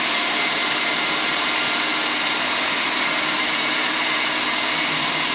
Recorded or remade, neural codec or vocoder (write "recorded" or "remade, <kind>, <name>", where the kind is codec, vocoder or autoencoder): recorded